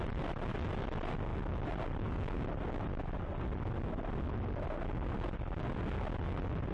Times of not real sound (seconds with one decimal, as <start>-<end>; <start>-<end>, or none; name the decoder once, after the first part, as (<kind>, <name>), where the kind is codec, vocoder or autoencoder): none